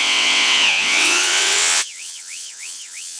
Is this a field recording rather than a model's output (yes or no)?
no